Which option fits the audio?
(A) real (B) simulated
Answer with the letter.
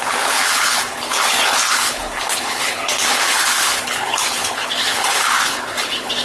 B